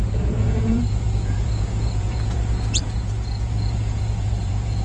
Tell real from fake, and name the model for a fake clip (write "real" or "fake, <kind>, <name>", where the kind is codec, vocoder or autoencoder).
fake, vocoder, Vocos